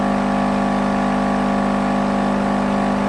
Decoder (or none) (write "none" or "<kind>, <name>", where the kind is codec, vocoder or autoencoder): none